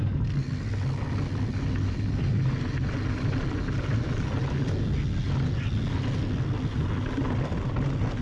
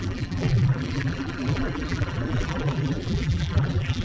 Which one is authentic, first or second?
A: first